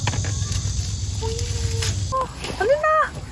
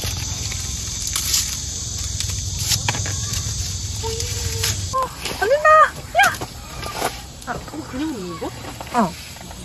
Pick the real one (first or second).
first